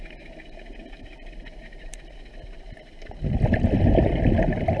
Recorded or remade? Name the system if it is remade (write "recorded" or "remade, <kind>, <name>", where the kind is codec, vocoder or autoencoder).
recorded